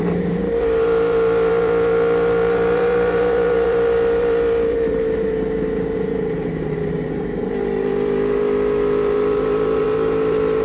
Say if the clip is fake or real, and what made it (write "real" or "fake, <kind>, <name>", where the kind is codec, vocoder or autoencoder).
fake, vocoder, BigVGAN v2